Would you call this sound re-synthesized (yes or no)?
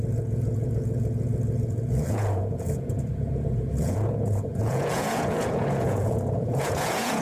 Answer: yes